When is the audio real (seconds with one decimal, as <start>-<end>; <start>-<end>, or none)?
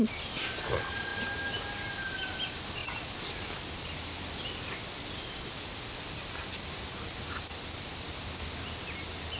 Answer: 0.0-9.4